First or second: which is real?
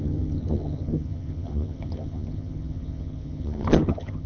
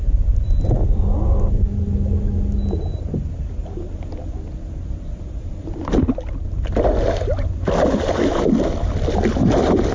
second